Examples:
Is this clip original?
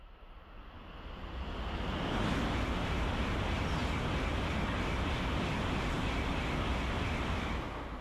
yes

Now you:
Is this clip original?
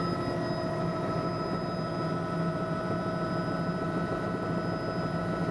yes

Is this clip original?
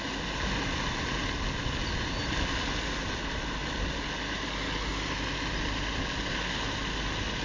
yes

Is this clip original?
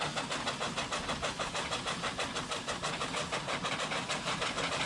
yes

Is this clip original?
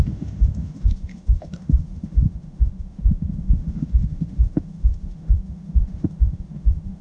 no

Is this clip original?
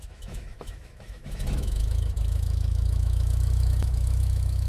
no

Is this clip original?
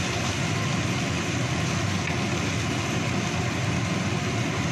yes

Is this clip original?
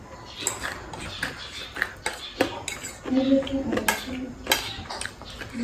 yes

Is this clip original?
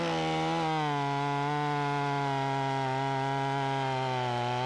yes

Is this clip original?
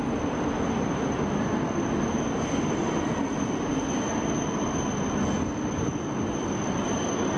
yes